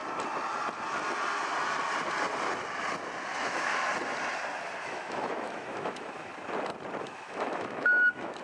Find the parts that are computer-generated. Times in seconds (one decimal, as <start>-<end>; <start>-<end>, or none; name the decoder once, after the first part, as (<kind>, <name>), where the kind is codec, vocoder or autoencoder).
3.3-3.7 (autoencoder, DAC-VAE); 4.8-6.3; 7.0-8.4